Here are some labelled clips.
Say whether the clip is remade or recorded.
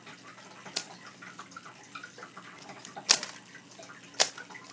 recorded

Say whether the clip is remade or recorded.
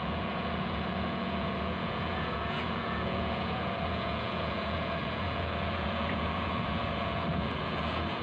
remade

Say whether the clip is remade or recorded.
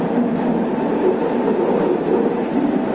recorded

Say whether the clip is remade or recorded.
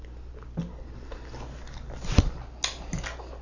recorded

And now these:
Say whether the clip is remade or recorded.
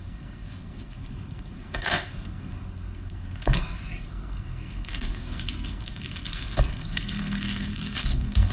remade